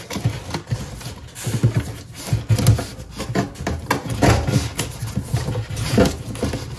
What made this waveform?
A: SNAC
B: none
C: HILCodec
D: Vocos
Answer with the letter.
B